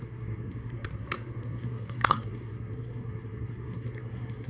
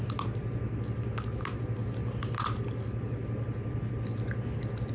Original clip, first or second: second